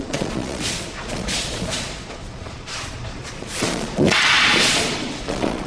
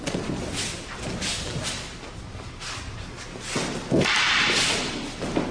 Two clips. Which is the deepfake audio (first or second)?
first